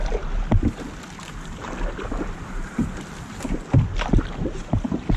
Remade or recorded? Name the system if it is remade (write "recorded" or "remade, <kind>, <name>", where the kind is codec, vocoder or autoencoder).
recorded